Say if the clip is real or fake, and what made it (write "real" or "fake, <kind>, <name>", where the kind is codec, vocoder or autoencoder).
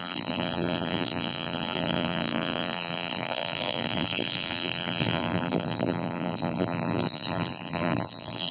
fake, vocoder, BigVGAN v2